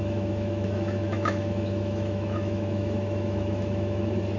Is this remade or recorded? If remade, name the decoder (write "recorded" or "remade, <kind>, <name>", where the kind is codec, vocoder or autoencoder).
remade, autoencoder, DAC-VAE